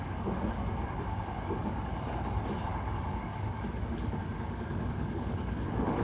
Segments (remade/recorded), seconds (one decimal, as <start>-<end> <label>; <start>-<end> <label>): 0.0-6.0 remade